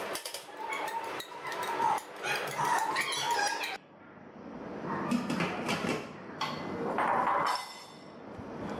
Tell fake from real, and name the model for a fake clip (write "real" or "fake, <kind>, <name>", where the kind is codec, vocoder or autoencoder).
real